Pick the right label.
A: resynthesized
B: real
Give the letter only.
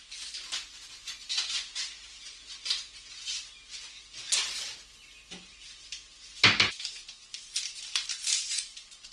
B